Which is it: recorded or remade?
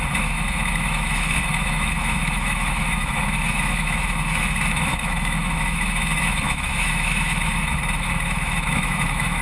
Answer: remade